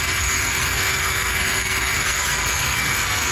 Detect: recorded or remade remade